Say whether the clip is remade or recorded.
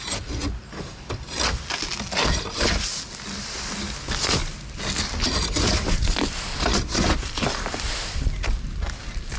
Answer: recorded